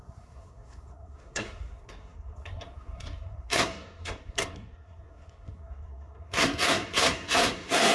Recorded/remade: remade